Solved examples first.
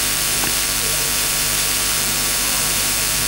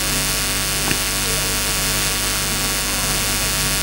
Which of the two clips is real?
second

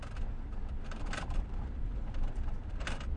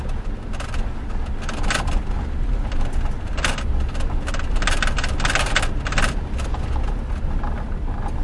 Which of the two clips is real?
second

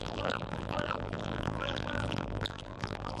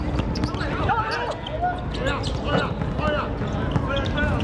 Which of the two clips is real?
second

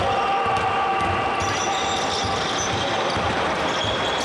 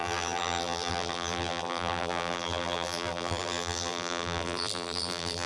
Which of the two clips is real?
first